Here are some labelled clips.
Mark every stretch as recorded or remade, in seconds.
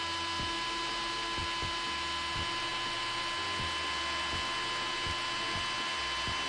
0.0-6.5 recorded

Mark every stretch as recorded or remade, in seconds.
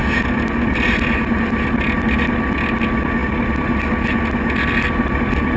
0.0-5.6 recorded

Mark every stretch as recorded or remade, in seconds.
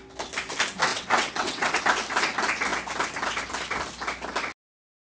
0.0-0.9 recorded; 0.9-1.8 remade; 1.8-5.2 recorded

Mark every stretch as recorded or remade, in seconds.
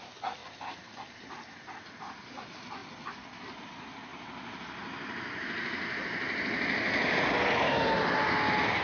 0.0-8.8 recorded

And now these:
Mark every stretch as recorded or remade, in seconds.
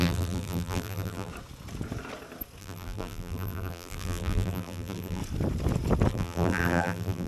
0.0-1.3 remade; 1.3-2.6 recorded; 2.6-5.2 remade; 5.2-6.1 recorded; 6.1-7.3 remade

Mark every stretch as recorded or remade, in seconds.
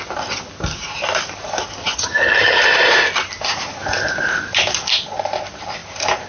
0.0-1.8 recorded; 1.8-2.6 remade; 2.6-6.3 recorded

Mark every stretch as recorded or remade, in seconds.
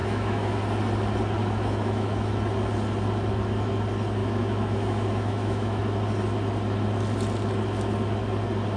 0.0-0.6 remade; 0.6-1.4 recorded; 1.4-2.3 remade; 2.3-4.2 recorded; 4.2-5.8 remade; 5.8-8.8 recorded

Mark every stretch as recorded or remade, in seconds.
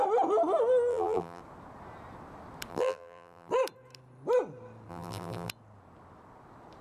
0.0-0.9 recorded; 0.9-1.4 remade; 1.4-2.7 recorded; 2.7-3.5 remade; 3.5-4.9 recorded; 4.9-5.5 remade; 5.5-6.8 recorded